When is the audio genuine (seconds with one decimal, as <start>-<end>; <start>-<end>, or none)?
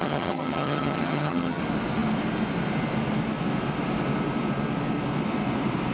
1.6-5.9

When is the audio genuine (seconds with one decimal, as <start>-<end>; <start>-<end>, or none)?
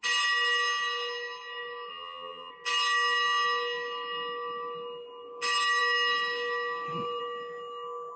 0.0-1.9; 2.5-8.2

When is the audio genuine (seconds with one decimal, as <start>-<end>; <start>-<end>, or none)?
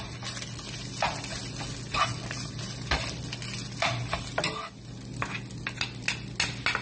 0.0-6.8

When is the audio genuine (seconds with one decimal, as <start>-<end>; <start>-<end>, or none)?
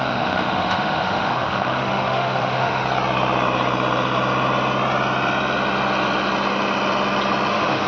2.8-7.5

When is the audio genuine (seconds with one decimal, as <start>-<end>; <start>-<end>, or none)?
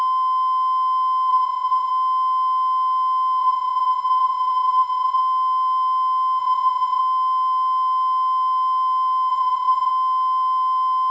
0.0-1.3; 1.9-3.4; 5.2-6.4; 7.0-9.3; 9.9-11.1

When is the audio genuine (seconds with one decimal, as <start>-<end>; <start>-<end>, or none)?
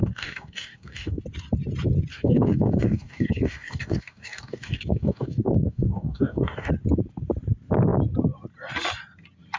1.2-2.1; 6.7-9.6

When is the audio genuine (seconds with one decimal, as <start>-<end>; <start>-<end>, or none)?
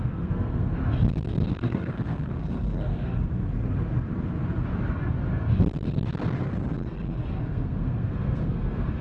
0.8-1.5; 3.3-7.4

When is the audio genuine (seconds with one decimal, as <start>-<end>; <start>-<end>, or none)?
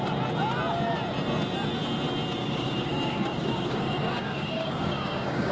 0.0-2.4